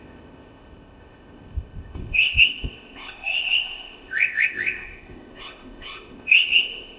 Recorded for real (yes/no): no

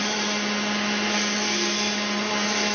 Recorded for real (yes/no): yes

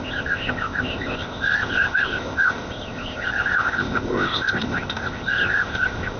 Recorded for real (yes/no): no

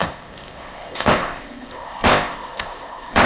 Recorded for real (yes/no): no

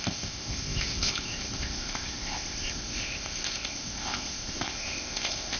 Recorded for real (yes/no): no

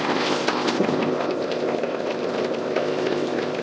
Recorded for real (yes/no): no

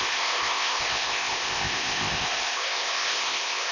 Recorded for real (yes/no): no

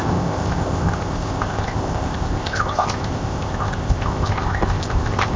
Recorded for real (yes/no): no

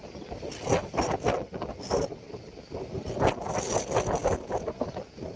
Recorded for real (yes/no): yes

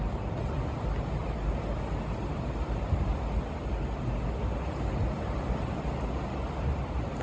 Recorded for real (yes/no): yes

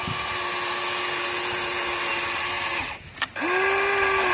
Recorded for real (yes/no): yes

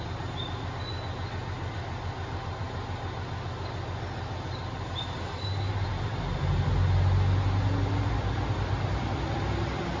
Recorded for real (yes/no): yes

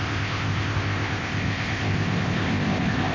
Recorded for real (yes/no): no